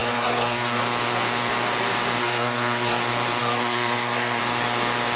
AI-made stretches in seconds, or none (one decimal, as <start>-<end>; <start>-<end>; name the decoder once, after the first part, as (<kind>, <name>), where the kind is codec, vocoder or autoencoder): 0.0-0.8 (codec, SNAC); 2.2-3.0; 3.4-4.4